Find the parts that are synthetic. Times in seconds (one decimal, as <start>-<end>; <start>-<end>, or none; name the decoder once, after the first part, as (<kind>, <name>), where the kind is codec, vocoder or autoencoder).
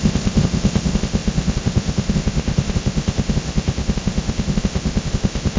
0.0-5.6 (codec, ZipCodec)